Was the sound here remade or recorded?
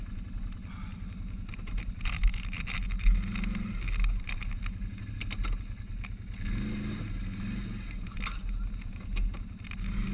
recorded